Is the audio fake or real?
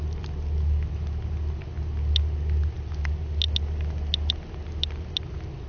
real